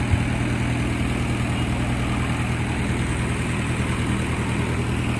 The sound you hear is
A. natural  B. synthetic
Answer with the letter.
A